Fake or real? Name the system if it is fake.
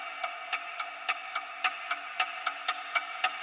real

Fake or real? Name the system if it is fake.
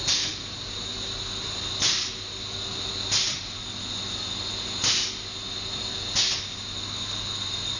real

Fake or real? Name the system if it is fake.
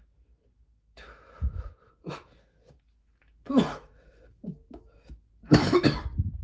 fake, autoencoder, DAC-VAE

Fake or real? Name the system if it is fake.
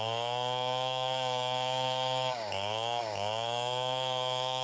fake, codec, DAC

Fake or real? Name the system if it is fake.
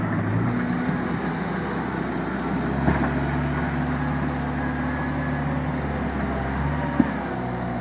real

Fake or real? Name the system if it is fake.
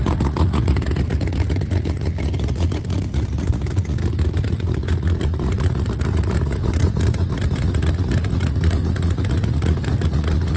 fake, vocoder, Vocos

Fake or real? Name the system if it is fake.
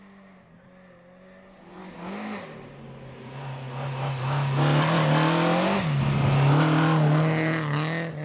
real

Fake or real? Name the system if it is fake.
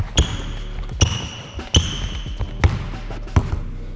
real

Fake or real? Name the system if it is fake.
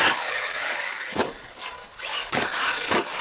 fake, codec, DAC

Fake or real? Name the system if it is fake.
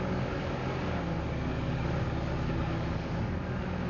fake, codec, DAC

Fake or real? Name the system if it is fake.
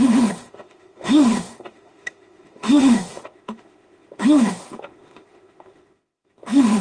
fake, autoencoder, DAC-VAE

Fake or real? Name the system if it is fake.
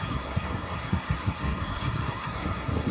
fake, codec, SNAC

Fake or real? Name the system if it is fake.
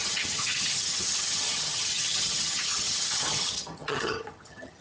fake, vocoder, HiFi-GAN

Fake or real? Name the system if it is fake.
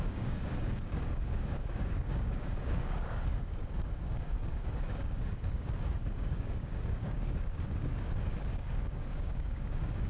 fake, codec, DAC